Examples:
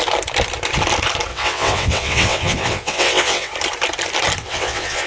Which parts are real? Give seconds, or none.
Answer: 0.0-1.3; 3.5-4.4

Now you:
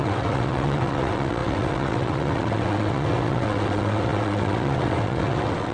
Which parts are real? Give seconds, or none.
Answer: none

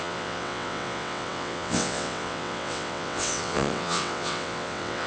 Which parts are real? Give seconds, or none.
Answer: none

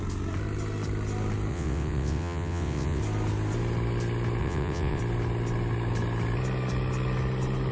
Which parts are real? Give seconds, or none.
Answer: 0.0-1.5; 3.0-4.4; 5.0-7.7

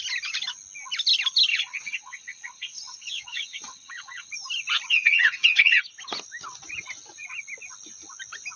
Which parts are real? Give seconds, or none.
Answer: 0.0-1.5; 4.3-4.9; 5.8-8.6